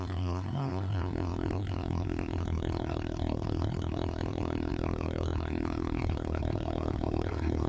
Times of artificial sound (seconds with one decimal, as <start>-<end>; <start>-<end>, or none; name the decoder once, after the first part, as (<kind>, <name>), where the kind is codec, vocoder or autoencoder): 0.0-7.7 (codec, SNAC)